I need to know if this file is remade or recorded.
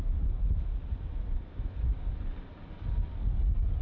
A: recorded